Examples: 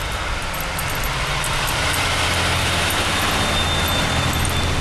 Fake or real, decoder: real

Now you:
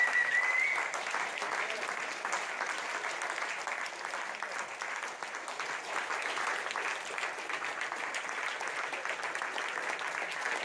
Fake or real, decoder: real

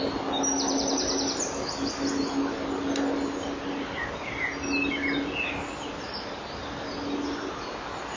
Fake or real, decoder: real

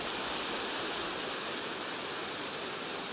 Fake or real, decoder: real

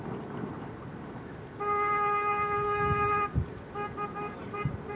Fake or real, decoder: real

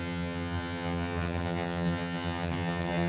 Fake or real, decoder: fake, vocoder, HiFi-GAN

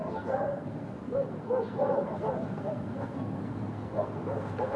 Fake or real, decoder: fake, codec, SNAC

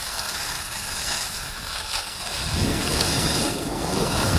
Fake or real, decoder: fake, codec, SNAC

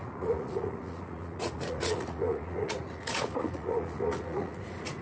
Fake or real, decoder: fake, vocoder, Vocos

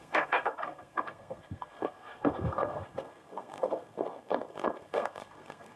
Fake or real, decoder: fake, codec, SNAC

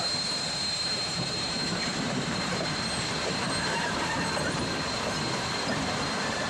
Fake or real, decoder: fake, vocoder, BigVGAN v2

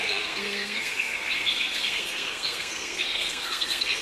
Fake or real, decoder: fake, codec, SNAC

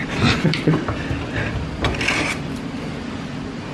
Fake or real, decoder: fake, vocoder, BigVGAN v2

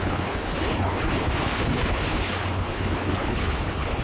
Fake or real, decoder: fake, codec, HILCodec